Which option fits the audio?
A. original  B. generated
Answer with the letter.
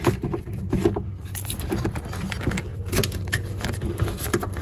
A